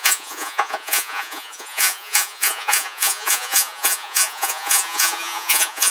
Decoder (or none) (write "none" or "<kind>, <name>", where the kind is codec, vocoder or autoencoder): vocoder, Vocos